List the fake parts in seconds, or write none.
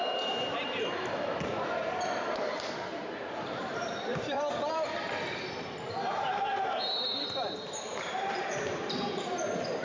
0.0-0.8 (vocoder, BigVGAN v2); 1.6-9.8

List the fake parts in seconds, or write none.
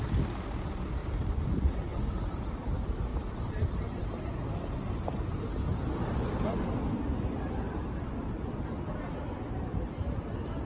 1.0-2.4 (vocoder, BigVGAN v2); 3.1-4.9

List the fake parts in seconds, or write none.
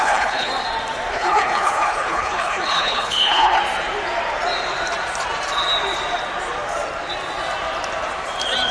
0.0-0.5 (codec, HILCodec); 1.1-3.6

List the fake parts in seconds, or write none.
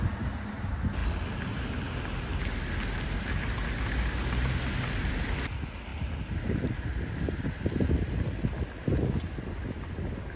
none